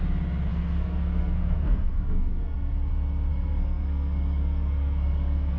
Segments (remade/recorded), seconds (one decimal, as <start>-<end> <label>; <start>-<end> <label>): 0.0-0.5 recorded; 0.5-2.9 remade; 2.9-3.3 recorded; 3.3-5.6 remade